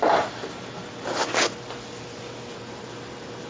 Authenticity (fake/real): real